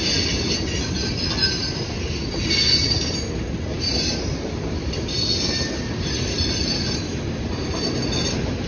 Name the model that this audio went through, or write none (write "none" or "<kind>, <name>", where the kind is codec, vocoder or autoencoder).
none